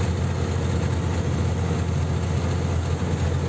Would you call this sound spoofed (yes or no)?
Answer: no